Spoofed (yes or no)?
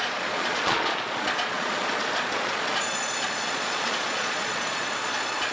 yes